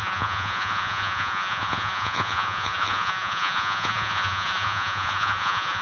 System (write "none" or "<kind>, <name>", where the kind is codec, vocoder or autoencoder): vocoder, Vocos